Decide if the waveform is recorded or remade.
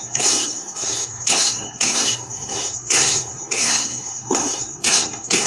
remade